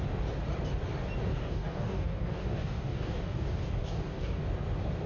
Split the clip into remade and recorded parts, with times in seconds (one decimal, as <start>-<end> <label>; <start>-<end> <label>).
0.0-1.3 recorded; 1.3-4.4 remade; 4.4-5.1 recorded